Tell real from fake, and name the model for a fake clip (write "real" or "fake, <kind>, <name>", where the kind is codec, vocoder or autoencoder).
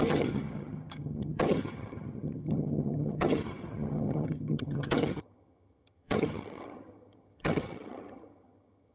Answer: fake, vocoder, HiFi-GAN